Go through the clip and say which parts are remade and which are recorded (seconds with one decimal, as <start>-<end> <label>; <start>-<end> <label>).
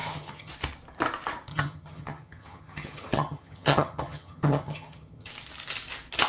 0.0-0.5 remade; 0.5-1.5 recorded; 1.5-5.3 remade; 5.3-6.3 recorded